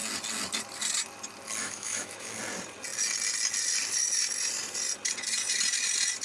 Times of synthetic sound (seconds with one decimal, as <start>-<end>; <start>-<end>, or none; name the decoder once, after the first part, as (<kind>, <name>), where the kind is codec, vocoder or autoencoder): 1.6-2.4 (autoencoder, DAC-VAE)